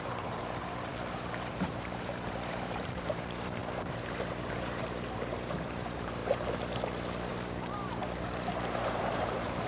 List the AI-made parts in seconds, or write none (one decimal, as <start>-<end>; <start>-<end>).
0.0-6.2; 7.3-9.7